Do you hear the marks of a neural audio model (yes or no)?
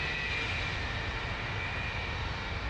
no